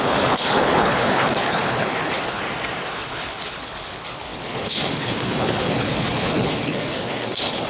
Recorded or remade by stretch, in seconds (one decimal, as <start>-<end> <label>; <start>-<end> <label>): 0.0-2.4 remade; 2.4-2.9 recorded; 2.9-7.7 remade